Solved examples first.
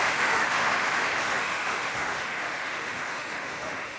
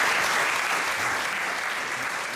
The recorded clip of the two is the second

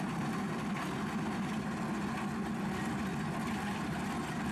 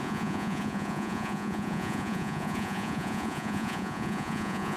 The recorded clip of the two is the first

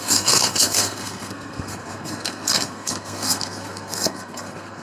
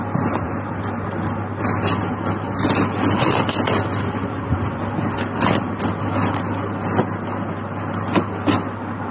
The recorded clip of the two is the second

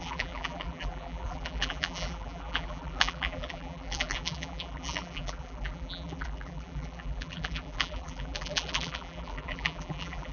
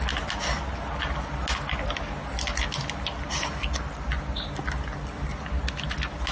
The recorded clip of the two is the second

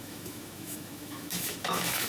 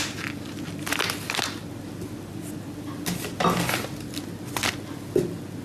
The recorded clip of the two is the second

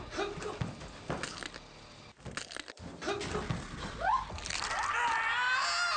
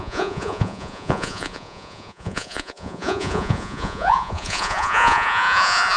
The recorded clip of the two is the first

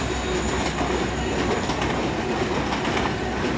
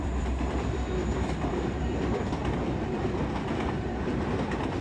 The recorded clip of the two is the first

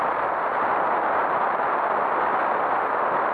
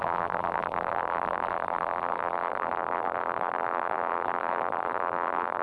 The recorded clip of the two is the first